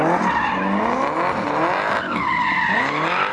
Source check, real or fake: real